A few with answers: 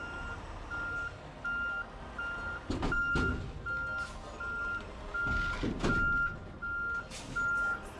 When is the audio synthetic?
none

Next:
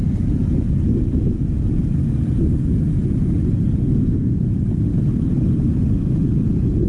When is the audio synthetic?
3.8-4.4 (codec, SNAC)

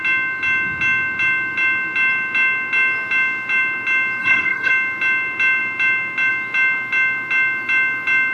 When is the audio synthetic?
4.2-4.7 (codec, SNAC)

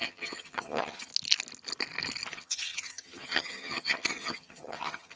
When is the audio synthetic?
0.0-1.1 (vocoder, HiFi-GAN); 2.3-5.2

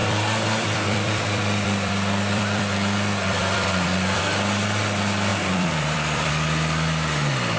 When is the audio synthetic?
0.0-4.2 (vocoder, BigVGAN v2); 5.3-6.3